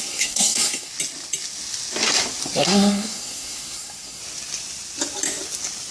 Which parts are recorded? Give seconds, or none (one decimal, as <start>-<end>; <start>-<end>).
0.9-2.6; 4.2-5.9